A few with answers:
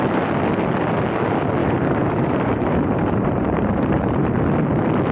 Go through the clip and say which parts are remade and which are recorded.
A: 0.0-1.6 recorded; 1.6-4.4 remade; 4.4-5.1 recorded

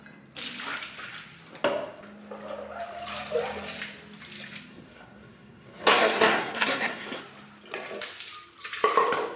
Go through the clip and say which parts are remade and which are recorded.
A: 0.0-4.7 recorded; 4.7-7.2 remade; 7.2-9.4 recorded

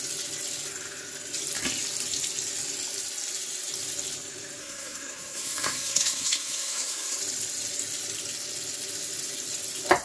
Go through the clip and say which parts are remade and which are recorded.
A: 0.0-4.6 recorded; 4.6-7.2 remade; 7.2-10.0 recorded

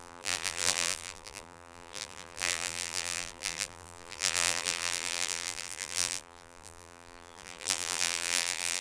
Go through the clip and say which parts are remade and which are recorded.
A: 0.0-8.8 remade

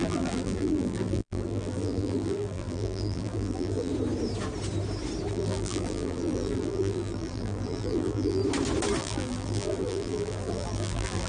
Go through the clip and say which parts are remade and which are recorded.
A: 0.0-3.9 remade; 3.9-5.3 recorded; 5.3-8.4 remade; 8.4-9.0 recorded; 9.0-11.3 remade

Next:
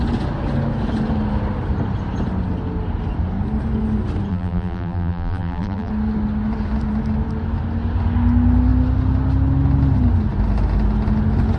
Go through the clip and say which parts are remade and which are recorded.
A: 0.0-4.3 recorded; 4.3-5.9 remade; 5.9-11.6 recorded

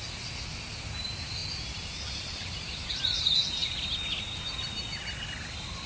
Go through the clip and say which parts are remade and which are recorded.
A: 0.0-1.4 recorded; 1.4-2.9 remade; 2.9-5.9 recorded